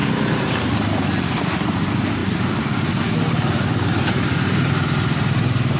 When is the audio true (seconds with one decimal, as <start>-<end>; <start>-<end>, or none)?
0.0-5.8